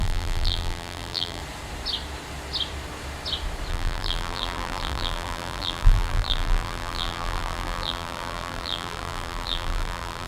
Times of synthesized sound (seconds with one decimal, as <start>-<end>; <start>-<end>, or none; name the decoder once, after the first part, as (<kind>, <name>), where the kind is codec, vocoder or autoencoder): 0.0-1.4 (vocoder, BigVGAN v2); 3.7-10.3